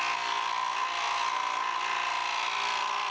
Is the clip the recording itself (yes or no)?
yes